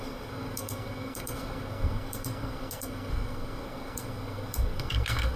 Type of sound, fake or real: fake